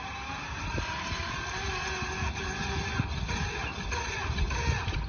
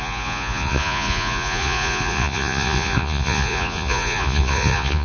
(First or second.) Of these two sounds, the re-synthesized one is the second